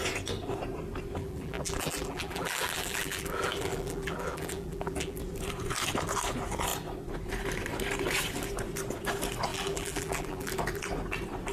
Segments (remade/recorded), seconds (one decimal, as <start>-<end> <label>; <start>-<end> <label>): 0.0-1.2 recorded; 1.2-5.2 remade; 5.2-9.5 recorded; 9.5-10.5 remade; 10.5-11.5 recorded